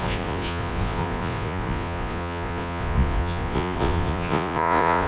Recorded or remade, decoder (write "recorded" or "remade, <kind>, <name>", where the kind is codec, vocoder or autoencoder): remade, vocoder, Vocos